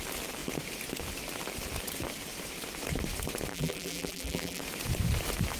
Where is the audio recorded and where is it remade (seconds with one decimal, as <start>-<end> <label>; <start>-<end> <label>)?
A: 0.0-3.5 recorded; 3.5-4.6 remade; 4.6-5.6 recorded